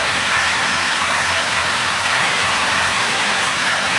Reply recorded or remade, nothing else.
remade